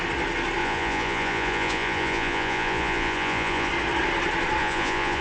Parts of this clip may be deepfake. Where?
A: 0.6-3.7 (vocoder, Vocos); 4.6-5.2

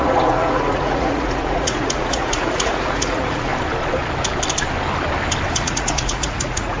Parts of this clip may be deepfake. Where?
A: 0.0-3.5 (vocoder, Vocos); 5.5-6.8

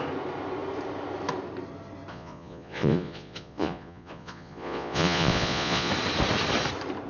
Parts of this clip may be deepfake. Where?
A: 2.1-5.9 (vocoder, Vocos)